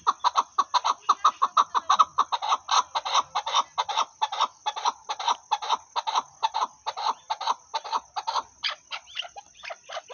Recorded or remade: recorded